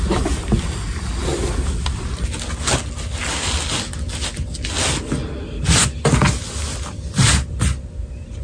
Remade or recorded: recorded